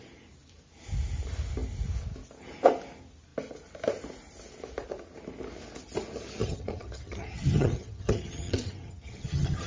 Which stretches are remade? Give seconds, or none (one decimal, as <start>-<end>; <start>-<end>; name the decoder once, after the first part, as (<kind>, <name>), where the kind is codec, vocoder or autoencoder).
6.4-9.7 (vocoder, HiFi-GAN)